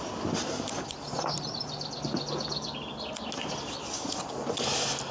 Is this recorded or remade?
recorded